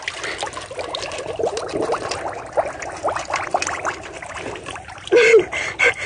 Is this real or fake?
real